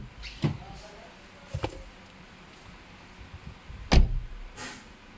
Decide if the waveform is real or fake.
real